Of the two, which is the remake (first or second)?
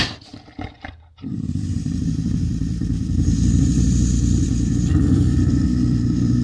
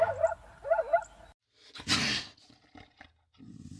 first